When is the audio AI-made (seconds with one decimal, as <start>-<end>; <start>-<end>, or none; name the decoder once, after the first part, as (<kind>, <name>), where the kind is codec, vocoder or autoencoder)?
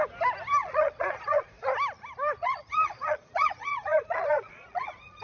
0.6-1.7 (vocoder, Vocos); 2.4-5.2